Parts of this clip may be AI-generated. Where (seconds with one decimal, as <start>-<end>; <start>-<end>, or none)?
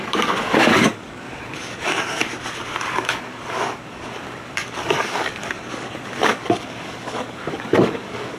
0.0-2.2; 2.9-8.4